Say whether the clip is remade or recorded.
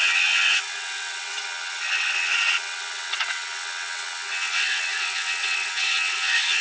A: remade